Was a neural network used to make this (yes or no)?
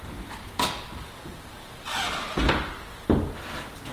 no